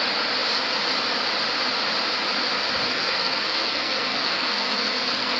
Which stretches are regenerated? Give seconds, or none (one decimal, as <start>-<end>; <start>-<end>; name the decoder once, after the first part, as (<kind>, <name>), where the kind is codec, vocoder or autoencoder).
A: 2.9-5.4 (codec, SNAC)